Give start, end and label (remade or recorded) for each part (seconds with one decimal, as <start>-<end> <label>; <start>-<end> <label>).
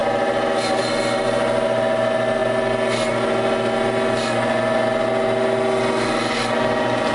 0.0-7.1 recorded